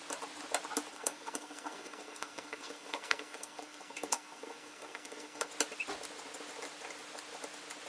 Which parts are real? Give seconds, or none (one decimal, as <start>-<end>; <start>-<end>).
0.0-0.9; 5.5-7.9